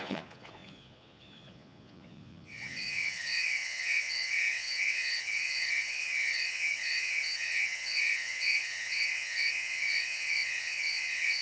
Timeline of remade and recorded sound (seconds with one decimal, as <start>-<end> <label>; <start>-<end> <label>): 0.0-11.4 remade